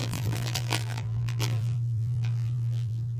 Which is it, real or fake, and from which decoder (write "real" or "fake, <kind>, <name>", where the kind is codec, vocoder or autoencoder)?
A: fake, vocoder, BigVGAN v2